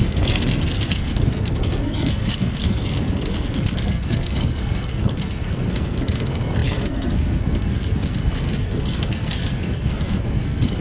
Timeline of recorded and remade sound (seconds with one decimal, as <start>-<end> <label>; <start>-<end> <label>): 0.0-10.8 remade